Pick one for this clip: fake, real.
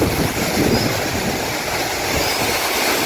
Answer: real